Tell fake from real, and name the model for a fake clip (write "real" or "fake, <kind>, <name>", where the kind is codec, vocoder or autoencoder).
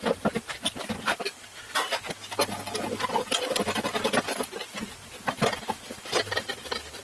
real